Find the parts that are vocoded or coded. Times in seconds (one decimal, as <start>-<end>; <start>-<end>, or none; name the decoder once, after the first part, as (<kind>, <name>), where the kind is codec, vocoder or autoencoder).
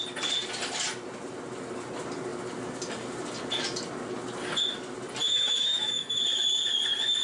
5.2-6.2 (autoencoder, DAC-VAE)